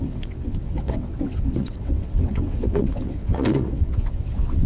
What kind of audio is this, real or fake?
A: fake